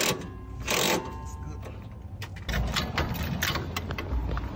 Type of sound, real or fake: real